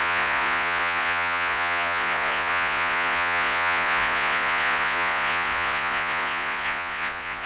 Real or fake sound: fake